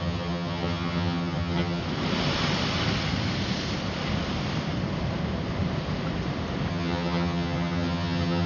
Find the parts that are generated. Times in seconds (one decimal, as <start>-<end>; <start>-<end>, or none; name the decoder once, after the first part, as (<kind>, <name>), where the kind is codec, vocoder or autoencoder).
0.0-1.8 (vocoder, HiFi-GAN); 6.7-8.5